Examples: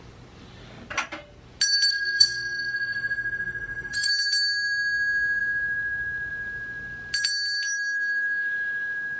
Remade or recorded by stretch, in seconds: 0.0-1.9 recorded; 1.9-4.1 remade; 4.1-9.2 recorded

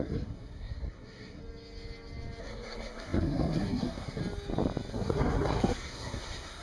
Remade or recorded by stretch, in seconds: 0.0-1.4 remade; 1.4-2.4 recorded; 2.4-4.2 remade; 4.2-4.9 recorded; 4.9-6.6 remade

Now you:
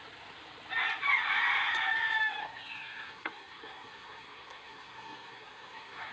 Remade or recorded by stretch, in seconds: 0.0-2.4 recorded; 2.4-6.1 remade